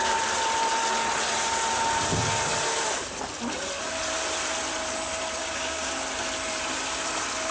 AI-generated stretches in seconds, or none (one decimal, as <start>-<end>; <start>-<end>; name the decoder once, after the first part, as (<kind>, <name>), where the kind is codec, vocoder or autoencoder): 5.4-5.9 (codec, DAC)

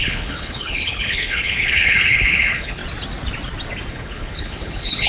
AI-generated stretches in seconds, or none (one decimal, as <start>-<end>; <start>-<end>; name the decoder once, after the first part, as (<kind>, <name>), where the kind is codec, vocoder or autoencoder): 0.0-2.8 (codec, HILCodec); 3.9-5.1

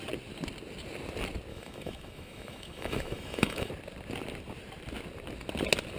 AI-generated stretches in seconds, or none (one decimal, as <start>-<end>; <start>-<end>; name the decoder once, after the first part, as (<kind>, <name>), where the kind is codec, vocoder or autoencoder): 1.5-3.7 (autoencoder, DAC-VAE)